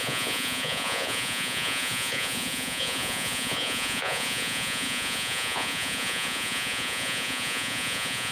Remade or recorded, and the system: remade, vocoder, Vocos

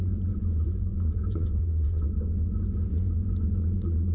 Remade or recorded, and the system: remade, vocoder, Vocos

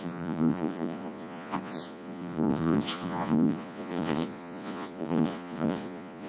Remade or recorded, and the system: remade, vocoder, Vocos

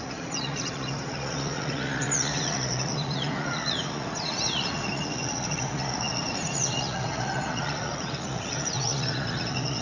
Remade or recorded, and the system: remade, vocoder, Vocos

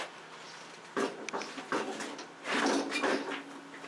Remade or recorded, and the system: recorded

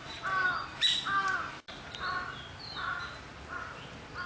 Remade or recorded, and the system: recorded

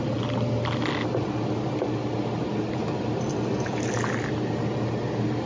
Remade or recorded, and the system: recorded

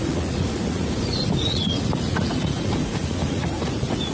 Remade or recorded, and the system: remade, vocoder, Vocos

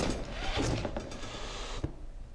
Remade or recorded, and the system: recorded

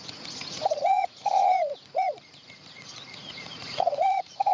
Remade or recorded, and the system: remade, vocoder, Vocos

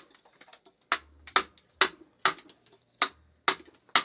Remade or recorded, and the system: recorded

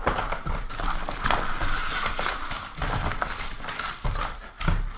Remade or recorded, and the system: recorded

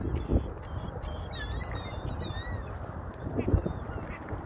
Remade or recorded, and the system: recorded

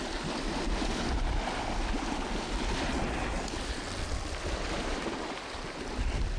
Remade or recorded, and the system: recorded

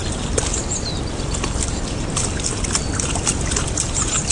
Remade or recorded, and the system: recorded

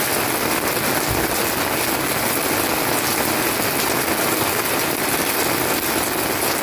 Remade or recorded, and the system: recorded